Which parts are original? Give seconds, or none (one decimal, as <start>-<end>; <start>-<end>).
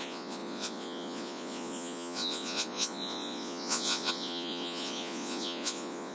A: none